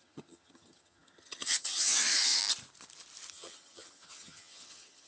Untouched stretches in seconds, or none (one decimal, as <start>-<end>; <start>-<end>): 2.4-3.3